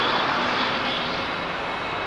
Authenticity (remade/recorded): recorded